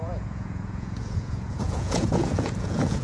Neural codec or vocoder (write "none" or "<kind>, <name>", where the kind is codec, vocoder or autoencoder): vocoder, Vocos